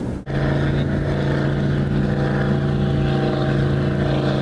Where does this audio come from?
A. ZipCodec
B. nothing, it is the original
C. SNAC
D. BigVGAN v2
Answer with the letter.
B